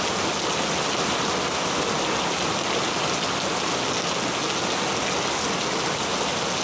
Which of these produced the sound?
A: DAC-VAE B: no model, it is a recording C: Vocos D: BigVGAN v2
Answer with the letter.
B